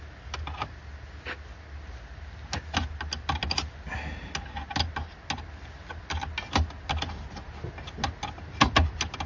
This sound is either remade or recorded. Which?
recorded